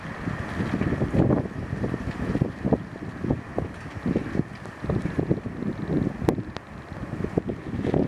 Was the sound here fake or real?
real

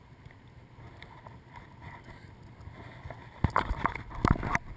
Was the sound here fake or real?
real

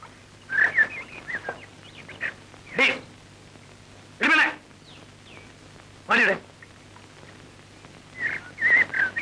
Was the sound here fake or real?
real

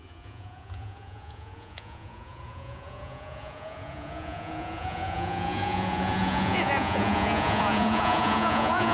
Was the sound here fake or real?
fake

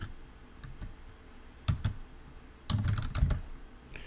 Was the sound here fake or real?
real